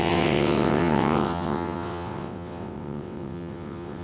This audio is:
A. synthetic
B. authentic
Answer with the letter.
A